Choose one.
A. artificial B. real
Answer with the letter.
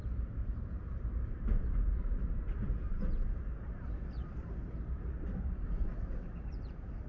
A